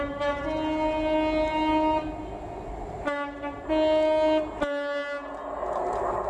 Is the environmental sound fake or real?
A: real